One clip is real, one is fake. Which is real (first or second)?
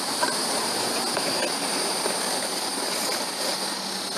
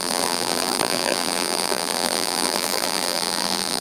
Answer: first